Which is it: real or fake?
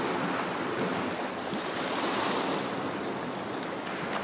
real